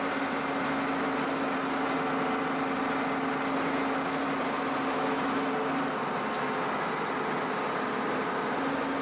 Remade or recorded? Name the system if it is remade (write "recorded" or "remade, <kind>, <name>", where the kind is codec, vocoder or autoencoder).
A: recorded